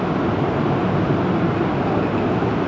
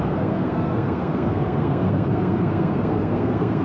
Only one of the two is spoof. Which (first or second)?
second